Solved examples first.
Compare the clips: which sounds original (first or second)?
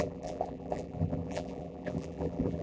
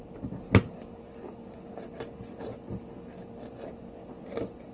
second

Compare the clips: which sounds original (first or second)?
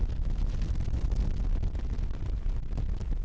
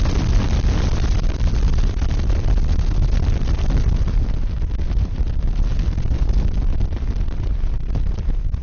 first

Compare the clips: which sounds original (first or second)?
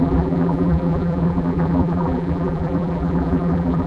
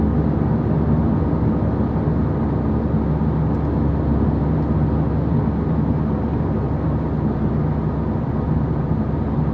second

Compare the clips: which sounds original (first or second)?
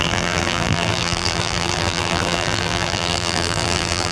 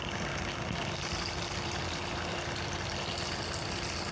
second